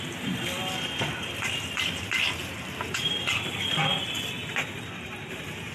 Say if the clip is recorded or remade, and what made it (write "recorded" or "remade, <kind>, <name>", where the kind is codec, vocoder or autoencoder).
remade, vocoder, BigVGAN v2